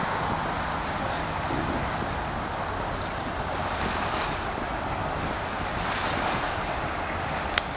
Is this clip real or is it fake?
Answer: real